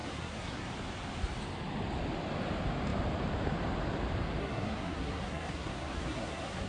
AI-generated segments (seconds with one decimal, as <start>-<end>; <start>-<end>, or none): 0.0-0.7; 4.4-6.7